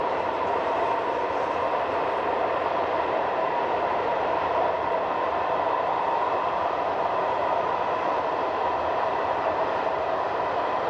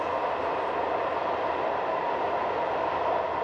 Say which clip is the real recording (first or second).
second